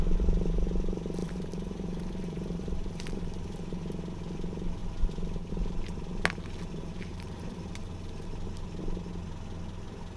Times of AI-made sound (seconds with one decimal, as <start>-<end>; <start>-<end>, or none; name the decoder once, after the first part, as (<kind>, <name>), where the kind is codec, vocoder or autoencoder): 1.2-3.2 (vocoder, BigVGAN v2); 7.1-7.7